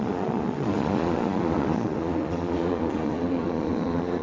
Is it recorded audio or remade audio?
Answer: remade